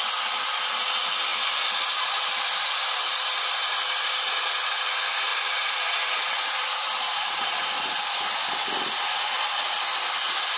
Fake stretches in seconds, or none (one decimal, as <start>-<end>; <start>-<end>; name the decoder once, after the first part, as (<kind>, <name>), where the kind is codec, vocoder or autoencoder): 5.3-7.7 (vocoder, BigVGAN v2)